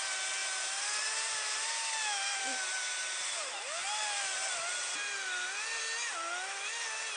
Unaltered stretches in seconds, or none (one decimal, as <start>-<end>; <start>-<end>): 0.0-7.2